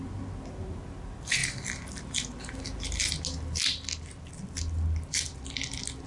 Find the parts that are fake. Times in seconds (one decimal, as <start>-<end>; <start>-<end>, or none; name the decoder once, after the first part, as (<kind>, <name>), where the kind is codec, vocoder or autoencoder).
none